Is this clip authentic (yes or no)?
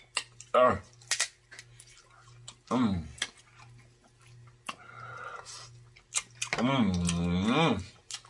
yes